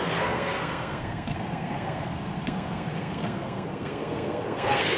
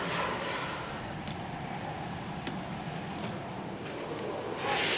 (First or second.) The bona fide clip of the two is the second